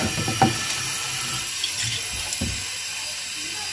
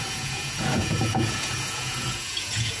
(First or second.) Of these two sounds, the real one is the first